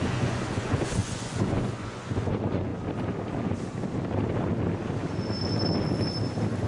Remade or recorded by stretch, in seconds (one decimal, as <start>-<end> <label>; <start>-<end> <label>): 0.0-2.7 remade; 2.7-6.7 recorded